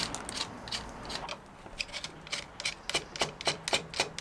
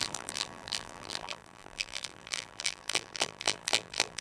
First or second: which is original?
first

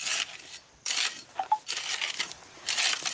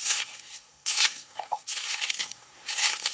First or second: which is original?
first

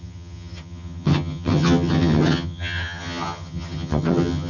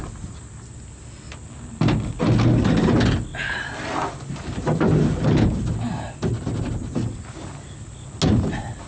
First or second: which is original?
second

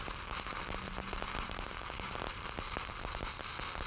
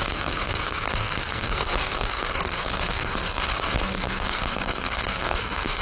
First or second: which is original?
first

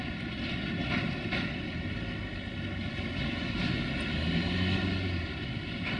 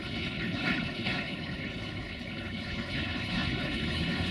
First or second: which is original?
first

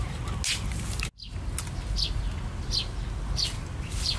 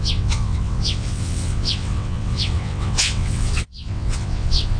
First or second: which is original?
first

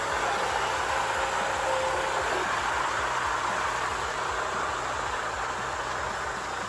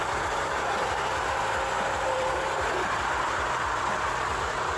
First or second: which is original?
first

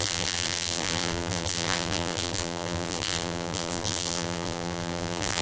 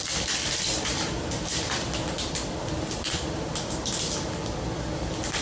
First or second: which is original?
second